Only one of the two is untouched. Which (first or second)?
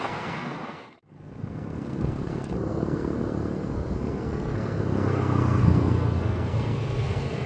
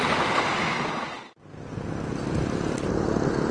second